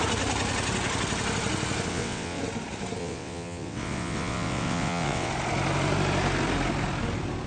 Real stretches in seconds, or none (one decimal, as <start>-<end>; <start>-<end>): 0.0-1.9; 2.4-3.0; 5.3-7.5